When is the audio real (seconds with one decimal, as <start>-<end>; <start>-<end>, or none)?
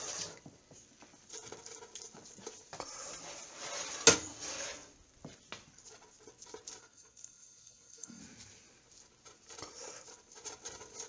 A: 0.0-6.8; 8.2-11.1